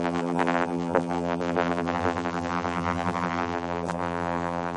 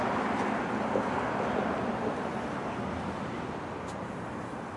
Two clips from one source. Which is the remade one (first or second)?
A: first